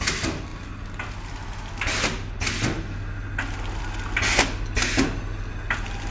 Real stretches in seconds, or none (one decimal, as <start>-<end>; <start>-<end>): 0.0-6.1